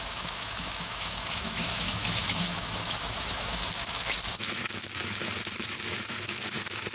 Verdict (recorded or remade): remade